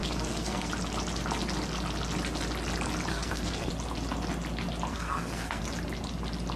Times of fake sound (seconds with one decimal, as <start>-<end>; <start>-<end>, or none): 0.0-0.7; 3.1-3.7; 4.9-5.6